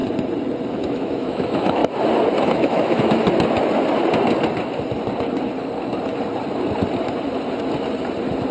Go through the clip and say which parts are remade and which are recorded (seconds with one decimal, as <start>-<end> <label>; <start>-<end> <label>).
0.0-0.7 recorded; 0.7-1.8 remade; 1.8-2.4 recorded; 2.4-3.2 remade; 3.2-8.5 recorded